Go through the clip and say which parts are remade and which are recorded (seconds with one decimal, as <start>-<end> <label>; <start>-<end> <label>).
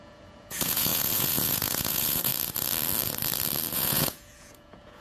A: 0.0-2.3 remade; 2.3-3.7 recorded; 3.7-5.0 remade